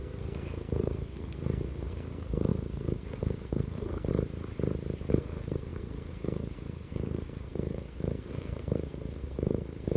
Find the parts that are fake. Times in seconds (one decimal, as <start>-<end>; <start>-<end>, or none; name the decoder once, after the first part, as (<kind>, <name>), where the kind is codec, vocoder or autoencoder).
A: 0.0-4.1 (codec, SNAC); 5.1-10.0